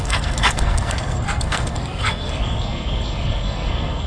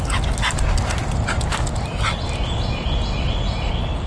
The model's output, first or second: first